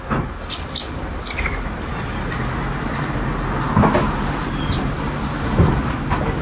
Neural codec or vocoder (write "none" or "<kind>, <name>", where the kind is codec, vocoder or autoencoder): none